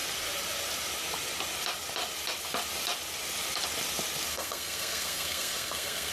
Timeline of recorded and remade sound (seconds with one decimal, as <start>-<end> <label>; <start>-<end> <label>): 0.0-4.3 recorded; 4.3-6.1 remade